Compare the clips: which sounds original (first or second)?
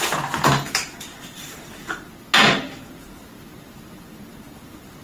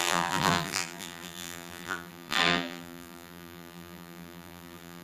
first